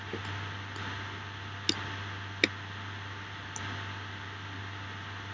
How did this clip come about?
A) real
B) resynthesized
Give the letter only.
A